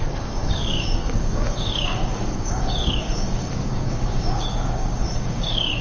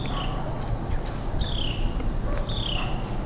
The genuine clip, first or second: second